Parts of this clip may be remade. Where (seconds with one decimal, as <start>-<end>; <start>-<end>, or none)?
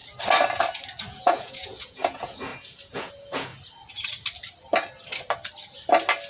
1.2-3.5